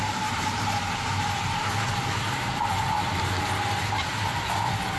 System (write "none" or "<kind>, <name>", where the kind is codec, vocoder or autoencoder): none